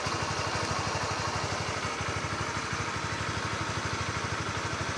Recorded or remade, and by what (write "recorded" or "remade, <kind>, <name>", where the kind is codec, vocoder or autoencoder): recorded